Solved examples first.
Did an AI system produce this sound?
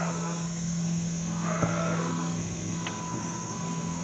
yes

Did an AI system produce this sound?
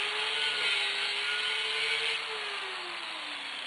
no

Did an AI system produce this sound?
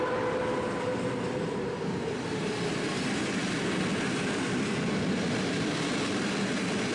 no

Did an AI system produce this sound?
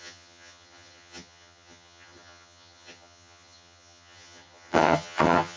yes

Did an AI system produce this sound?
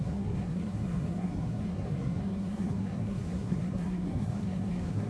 yes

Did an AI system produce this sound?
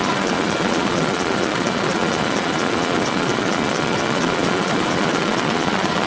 yes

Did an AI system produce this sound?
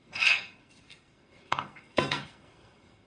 yes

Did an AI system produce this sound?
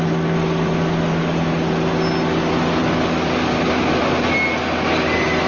no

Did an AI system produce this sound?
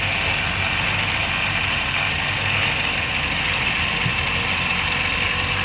no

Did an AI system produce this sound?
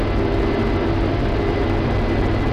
no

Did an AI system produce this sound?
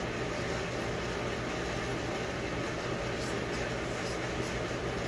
no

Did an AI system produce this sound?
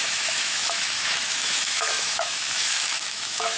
yes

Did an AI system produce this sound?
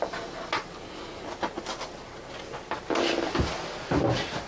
no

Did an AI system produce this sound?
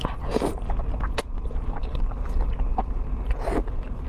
no